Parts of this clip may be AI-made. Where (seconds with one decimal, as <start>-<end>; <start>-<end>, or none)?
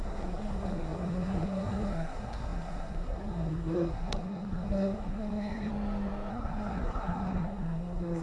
0.0-5.7; 6.3-8.2